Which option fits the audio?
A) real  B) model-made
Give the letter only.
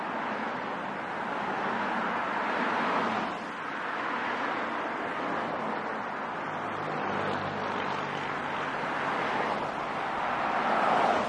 A